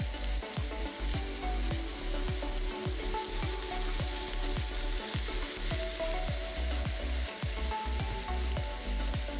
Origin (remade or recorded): recorded